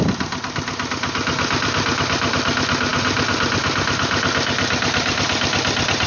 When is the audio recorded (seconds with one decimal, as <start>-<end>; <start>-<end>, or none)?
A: 0.0-6.1